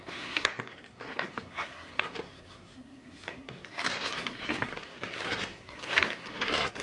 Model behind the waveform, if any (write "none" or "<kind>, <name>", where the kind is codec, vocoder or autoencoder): codec, SNAC